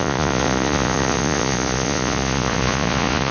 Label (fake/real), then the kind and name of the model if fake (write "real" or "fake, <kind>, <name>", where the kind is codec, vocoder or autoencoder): fake, vocoder, Vocos